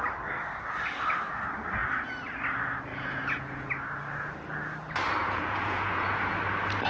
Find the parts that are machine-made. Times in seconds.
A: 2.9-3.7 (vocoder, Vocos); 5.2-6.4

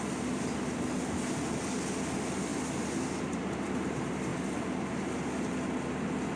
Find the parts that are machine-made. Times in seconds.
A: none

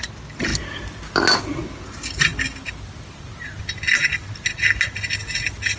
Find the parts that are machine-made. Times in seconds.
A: none

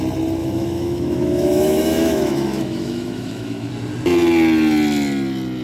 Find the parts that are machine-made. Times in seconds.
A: 0.4-3.7 (autoencoder, DAC-VAE)